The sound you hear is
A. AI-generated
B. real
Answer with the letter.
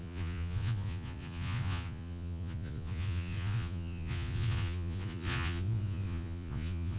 A